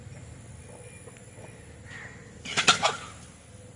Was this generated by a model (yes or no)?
no